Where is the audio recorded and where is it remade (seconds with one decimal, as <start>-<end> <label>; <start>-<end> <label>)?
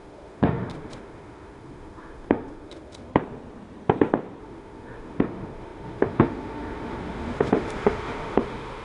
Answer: 0.0-3.1 remade; 3.1-4.4 recorded; 4.4-8.8 remade